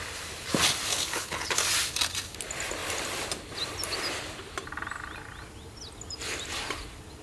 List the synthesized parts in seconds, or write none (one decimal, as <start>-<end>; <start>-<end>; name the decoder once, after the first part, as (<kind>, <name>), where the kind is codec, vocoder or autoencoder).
0.9-1.6 (codec, HILCodec)